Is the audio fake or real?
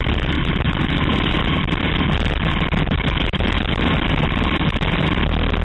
real